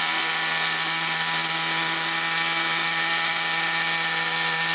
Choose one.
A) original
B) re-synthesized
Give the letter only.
A